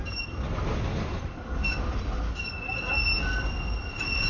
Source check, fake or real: real